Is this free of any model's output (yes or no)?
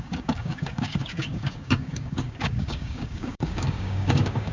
no